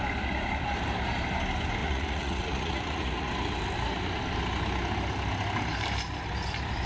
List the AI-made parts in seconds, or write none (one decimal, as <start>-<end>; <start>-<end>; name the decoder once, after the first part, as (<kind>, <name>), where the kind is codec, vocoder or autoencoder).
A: 1.8-3.3 (vocoder, Vocos)